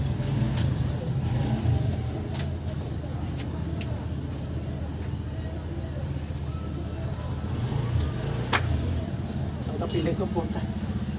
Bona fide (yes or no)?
yes